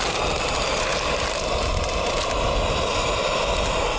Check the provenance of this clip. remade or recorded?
recorded